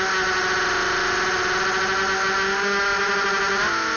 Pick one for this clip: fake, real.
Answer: real